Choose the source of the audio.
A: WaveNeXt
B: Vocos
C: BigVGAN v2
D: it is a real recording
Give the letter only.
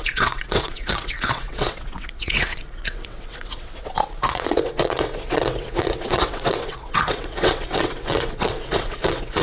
A